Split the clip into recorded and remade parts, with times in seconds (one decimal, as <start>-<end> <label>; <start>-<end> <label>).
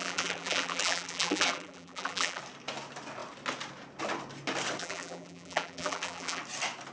0.0-2.4 remade; 2.4-4.8 recorded; 4.8-6.4 remade; 6.4-6.9 recorded